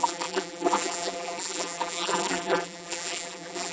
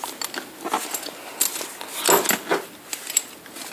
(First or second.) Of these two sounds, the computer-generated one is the first